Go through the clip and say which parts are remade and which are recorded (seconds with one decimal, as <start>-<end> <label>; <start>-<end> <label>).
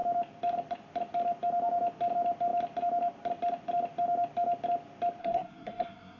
0.0-5.2 recorded; 5.2-6.2 remade